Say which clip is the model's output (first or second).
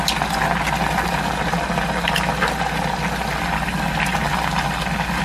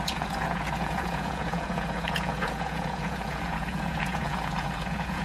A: second